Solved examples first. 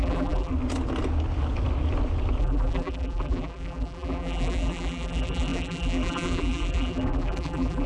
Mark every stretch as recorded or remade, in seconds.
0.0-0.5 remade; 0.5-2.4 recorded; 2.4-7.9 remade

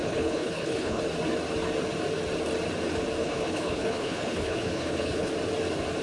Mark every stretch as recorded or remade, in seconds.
0.0-1.0 remade; 1.0-3.2 recorded; 3.2-5.3 remade; 5.3-6.0 recorded

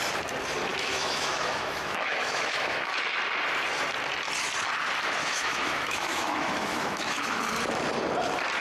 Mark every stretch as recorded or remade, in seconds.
0.0-0.7 recorded; 0.7-2.9 remade; 2.9-5.2 recorded; 5.2-7.4 remade; 7.4-8.6 recorded

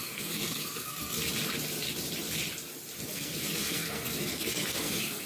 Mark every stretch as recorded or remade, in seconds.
0.0-1.2 remade; 1.2-3.0 recorded; 3.0-5.3 remade